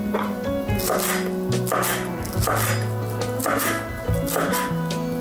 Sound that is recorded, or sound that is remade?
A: recorded